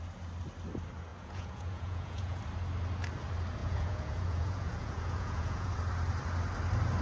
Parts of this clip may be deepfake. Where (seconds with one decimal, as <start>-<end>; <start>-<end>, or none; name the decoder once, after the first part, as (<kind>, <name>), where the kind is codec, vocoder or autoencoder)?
1.1-2.4 (vocoder, Vocos); 3.6-5.7